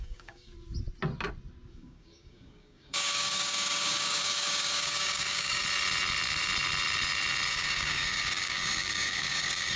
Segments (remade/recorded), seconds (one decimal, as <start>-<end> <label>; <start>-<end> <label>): 0.0-0.5 remade; 0.5-1.7 recorded; 1.7-5.6 remade; 5.6-7.5 recorded; 7.5-9.8 remade